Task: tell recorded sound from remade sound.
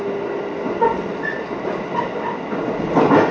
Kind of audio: recorded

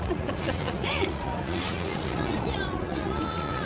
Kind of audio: remade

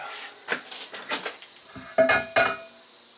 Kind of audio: recorded